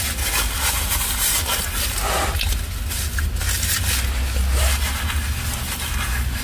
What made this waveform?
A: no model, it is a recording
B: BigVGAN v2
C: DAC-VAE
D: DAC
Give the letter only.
A